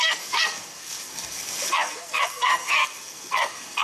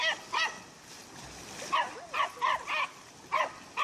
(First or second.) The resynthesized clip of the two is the first